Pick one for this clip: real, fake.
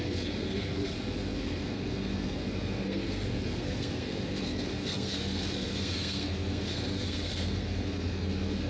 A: fake